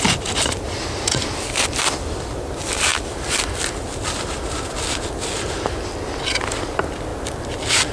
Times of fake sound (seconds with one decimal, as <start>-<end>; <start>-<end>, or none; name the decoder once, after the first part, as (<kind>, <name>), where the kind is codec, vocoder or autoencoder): none